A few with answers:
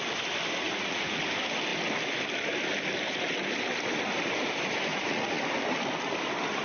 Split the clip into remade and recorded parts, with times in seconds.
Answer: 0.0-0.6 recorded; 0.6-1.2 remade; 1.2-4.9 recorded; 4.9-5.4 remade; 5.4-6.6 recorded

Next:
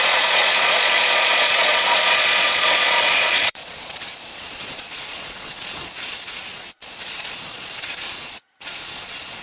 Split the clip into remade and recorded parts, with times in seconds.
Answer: 0.0-9.4 remade

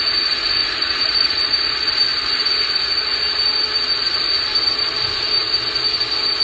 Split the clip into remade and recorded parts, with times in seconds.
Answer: 0.0-0.6 recorded; 0.6-1.5 remade; 1.5-6.4 recorded

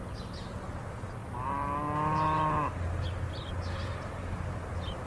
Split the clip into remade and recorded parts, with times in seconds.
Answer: 0.0-5.1 recorded

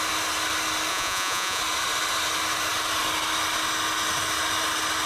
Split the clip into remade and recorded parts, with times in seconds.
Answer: 0.0-0.9 recorded; 0.9-1.6 remade; 1.6-5.1 recorded